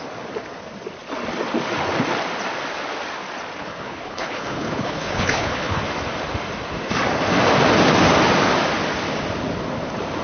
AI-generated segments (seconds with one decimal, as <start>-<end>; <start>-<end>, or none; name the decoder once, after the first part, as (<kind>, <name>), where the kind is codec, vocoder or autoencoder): 3.6-5.8 (codec, HILCodec)